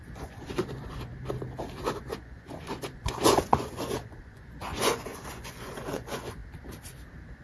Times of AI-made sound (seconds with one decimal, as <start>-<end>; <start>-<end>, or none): 0.0-1.1; 2.0-6.4